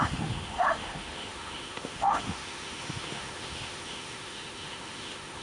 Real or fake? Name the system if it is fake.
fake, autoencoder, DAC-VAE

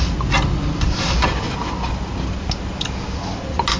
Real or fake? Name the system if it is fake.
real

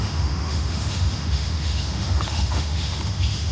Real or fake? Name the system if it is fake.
fake, autoencoder, DAC-VAE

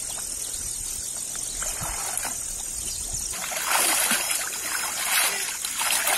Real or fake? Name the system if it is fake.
real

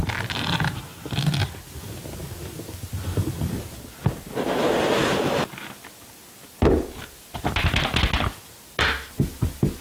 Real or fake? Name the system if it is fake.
real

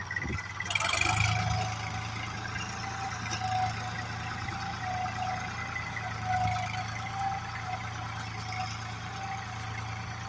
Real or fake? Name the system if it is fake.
real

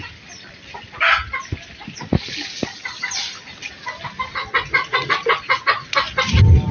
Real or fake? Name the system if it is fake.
real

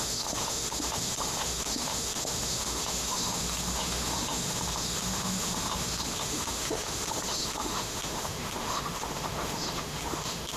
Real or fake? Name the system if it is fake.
fake, autoencoder, DAC-VAE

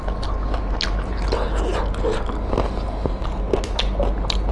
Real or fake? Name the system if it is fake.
real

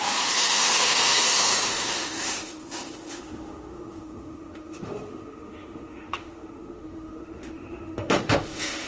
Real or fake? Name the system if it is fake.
fake, autoencoder, DAC-VAE